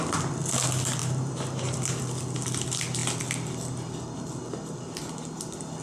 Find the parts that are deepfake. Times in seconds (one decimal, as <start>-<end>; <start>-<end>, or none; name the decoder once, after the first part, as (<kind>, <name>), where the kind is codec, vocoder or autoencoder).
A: 1.0-2.0 (vocoder, BigVGAN v2)